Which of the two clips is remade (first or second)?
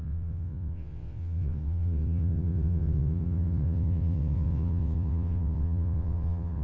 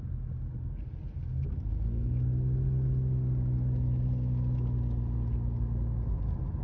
first